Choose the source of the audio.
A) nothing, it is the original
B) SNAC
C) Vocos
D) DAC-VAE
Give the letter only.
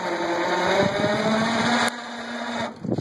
A